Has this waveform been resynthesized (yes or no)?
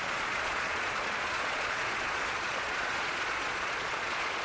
yes